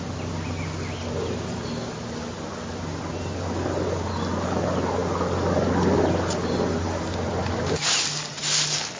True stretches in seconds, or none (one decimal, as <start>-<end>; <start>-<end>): 0.0-9.0